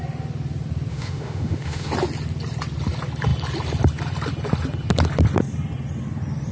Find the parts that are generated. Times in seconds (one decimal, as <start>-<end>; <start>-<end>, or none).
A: 0.9-1.9